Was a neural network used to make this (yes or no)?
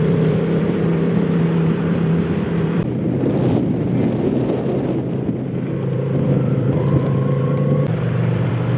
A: yes